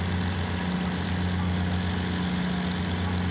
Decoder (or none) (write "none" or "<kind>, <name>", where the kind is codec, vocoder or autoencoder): none